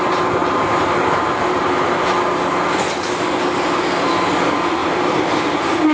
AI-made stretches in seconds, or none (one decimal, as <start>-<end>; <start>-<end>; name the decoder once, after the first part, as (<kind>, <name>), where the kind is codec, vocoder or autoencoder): 0.4-2.2 (vocoder, BigVGAN v2); 4.8-5.4